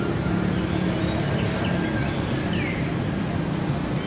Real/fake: real